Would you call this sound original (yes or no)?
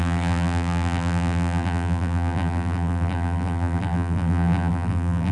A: no